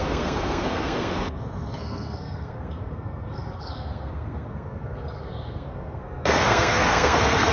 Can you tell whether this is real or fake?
fake